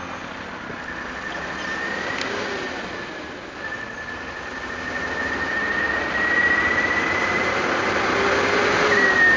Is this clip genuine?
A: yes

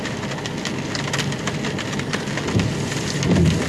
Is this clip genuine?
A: yes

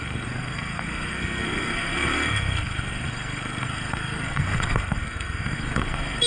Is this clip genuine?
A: no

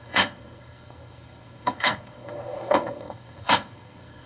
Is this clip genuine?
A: no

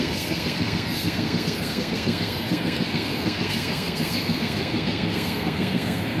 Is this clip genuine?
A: no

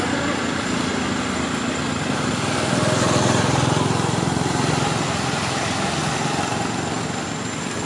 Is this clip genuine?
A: yes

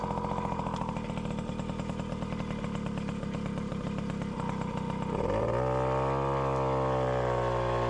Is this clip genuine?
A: yes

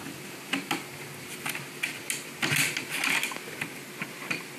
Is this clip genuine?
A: yes